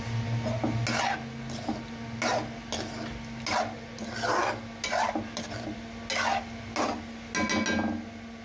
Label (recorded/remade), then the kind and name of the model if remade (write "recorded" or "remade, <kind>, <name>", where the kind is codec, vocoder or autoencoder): recorded